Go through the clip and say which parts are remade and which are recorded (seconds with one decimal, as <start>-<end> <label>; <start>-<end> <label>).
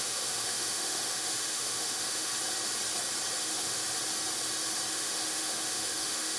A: 0.0-2.3 remade; 2.3-3.4 recorded; 3.4-3.8 remade; 3.8-4.9 recorded; 4.9-6.4 remade